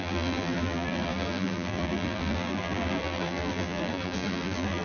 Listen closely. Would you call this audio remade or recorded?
remade